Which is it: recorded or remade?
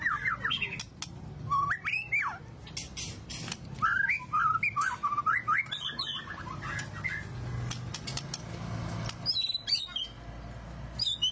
recorded